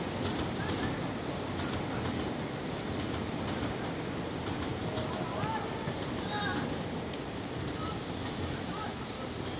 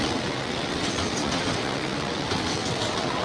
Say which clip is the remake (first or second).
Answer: second